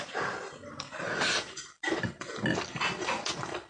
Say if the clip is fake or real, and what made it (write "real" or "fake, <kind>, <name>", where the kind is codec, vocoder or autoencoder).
fake, vocoder, BigVGAN v2